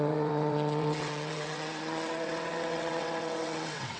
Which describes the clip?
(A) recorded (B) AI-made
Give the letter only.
B